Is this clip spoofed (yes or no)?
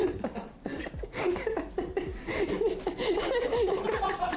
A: yes